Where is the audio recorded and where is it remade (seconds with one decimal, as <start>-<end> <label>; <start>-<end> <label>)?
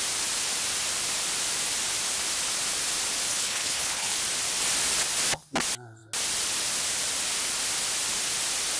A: 0.0-3.3 recorded; 3.3-4.2 remade; 4.2-8.8 recorded